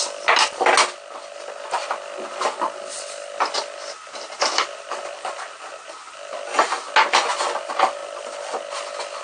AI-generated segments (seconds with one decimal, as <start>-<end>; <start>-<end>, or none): none